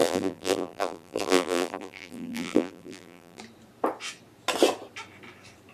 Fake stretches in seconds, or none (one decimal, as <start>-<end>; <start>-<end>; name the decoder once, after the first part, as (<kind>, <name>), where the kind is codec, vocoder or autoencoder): 0.0-3.4 (vocoder, BigVGAN v2)